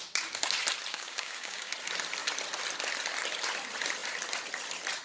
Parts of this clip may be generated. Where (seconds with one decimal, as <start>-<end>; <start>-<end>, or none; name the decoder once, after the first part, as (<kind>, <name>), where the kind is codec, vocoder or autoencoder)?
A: 0.9-1.7 (codec, DAC)